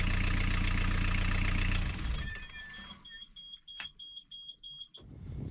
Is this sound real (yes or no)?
yes